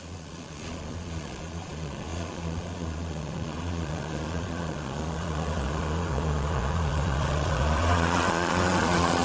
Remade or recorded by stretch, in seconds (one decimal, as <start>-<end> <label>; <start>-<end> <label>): 0.0-9.2 remade